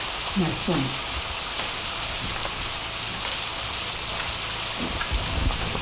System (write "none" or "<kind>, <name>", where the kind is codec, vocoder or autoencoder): none